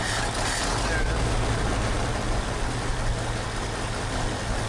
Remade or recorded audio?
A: recorded